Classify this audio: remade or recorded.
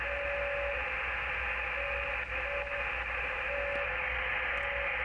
recorded